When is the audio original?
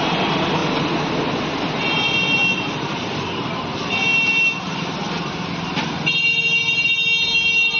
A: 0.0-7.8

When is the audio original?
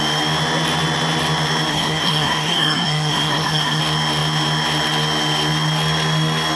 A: 0.0-1.7; 3.8-6.6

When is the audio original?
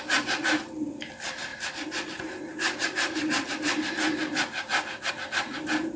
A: 0.0-6.0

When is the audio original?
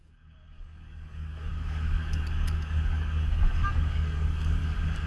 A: none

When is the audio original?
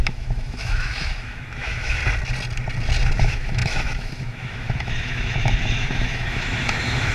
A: 2.0-3.2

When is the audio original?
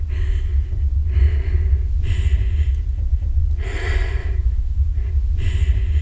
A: 0.0-4.2; 4.8-6.0